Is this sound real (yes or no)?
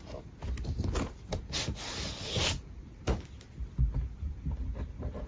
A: yes